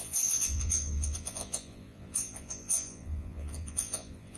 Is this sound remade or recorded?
remade